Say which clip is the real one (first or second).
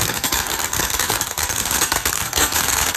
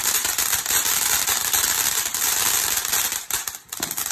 second